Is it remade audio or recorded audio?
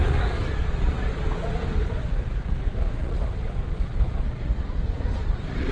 remade